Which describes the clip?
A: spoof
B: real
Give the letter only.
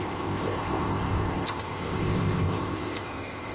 A